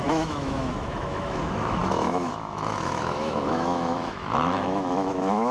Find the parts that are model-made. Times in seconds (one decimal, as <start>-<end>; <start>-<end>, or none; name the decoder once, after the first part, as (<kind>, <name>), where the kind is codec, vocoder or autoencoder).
0.0-5.5 (autoencoder, DAC-VAE)